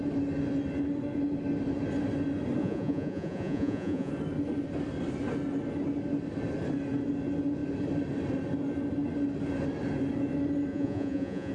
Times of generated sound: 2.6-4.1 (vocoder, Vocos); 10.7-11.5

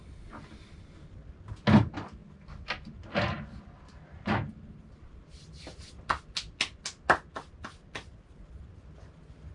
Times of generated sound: none

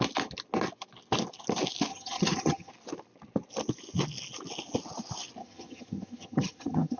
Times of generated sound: 1.9-2.7 (vocoder, HiFi-GAN); 5.4-7.0

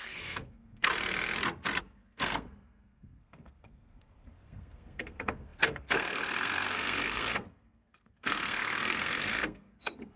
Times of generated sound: 0.0-0.9 (codec, SNAC); 1.8-10.2

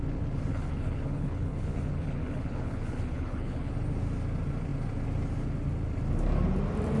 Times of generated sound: 0.5-3.7 (codec, HILCodec)

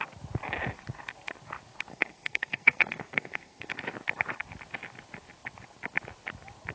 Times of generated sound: 1.9-3.7 (codec, SNAC)

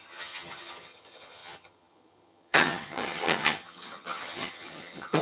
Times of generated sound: 0.0-5.2 (vocoder, HiFi-GAN)